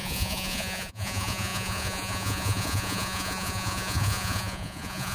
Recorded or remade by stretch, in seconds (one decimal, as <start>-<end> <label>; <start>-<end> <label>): 0.0-5.1 remade